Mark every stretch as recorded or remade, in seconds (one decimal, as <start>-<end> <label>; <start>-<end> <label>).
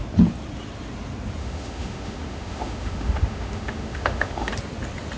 0.0-1.4 recorded; 1.4-4.5 remade; 4.5-5.2 recorded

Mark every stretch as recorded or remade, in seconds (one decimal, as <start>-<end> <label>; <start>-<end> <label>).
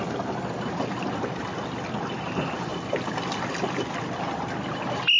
0.0-5.2 recorded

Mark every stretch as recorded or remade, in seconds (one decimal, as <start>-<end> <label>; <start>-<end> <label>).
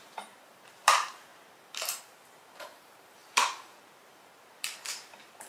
0.0-5.5 remade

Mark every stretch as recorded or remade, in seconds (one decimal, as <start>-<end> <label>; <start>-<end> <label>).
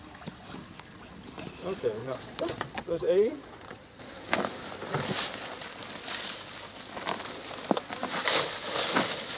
0.0-2.0 recorded; 2.0-4.1 remade; 4.1-9.4 recorded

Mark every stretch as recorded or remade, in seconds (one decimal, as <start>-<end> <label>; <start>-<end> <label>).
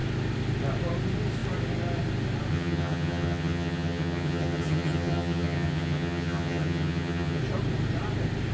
0.0-2.5 recorded; 2.5-7.4 remade; 7.4-8.5 recorded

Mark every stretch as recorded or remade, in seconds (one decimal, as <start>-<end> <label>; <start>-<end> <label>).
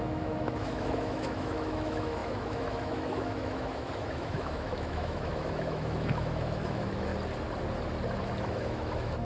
0.0-7.1 remade; 7.1-8.4 recorded; 8.4-9.2 remade